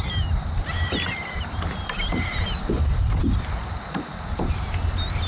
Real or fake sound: real